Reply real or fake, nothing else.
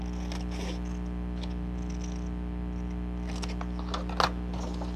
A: real